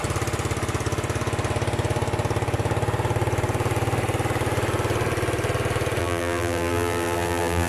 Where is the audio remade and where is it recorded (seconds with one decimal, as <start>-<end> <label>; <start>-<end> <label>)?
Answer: 0.0-6.0 recorded; 6.0-7.7 remade

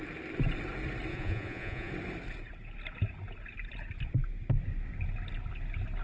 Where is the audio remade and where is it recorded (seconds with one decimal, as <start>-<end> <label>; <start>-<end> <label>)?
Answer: 0.0-1.1 recorded; 1.1-1.9 remade; 1.9-6.0 recorded